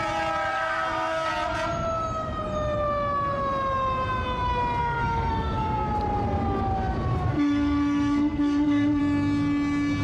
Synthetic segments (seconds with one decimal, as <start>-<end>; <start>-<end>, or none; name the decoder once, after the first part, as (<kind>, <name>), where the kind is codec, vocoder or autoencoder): 0.5-1.3 (codec, SNAC); 4.8-5.9; 7.3-9.0